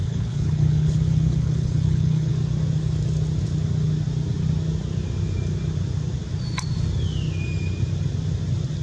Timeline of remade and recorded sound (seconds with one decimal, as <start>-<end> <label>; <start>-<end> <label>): 0.0-2.3 remade; 2.3-8.8 recorded